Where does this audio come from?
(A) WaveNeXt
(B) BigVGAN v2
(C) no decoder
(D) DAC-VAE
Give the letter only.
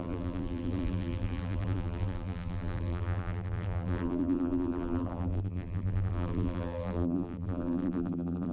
B